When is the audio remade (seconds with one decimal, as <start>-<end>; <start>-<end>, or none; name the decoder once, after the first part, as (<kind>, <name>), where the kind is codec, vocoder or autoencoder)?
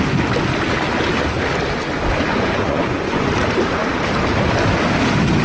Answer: 2.3-3.3 (vocoder, Vocos)